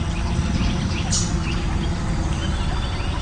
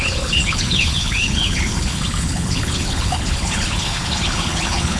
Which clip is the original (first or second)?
first